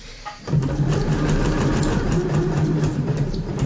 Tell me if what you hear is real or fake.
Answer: fake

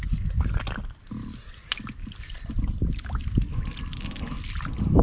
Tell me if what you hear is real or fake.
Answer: real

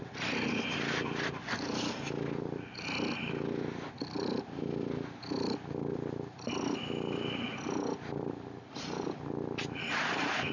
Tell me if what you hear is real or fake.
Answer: real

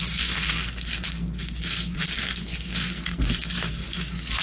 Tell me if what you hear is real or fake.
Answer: fake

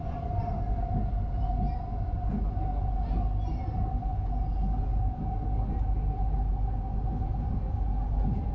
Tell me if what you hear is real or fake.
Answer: real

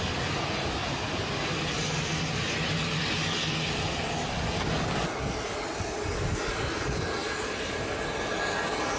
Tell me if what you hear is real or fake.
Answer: real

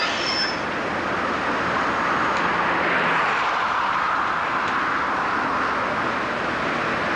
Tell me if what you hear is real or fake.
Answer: real